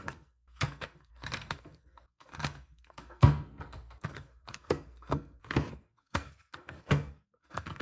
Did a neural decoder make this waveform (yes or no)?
yes